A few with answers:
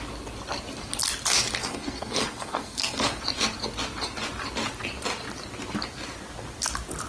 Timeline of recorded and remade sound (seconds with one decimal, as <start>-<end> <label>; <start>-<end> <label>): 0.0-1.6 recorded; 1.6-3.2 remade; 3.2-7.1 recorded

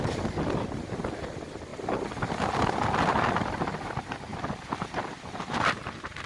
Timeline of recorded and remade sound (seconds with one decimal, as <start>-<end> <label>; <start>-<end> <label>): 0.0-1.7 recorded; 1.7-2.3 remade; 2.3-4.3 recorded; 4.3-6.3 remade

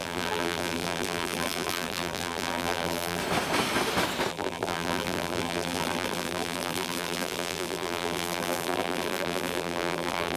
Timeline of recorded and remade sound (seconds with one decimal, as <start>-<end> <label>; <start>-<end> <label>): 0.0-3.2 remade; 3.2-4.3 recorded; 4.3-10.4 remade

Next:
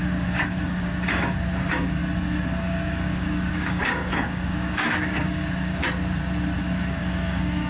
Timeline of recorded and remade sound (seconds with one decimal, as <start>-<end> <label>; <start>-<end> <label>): 0.0-2.0 remade; 2.0-2.6 recorded; 2.6-5.8 remade; 5.8-6.6 recorded; 6.6-7.7 remade

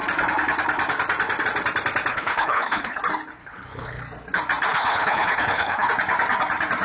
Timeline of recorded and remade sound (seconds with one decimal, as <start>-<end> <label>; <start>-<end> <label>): 0.0-2.1 recorded; 2.1-3.0 remade; 3.0-3.4 recorded; 3.4-4.0 remade; 4.0-4.7 recorded; 4.7-5.9 remade; 5.9-6.8 recorded

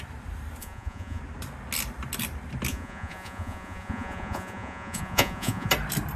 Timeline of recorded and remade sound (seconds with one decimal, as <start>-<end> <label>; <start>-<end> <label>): 0.0-0.6 recorded; 0.6-1.2 remade; 1.2-2.7 recorded; 2.7-5.7 remade; 5.7-6.2 recorded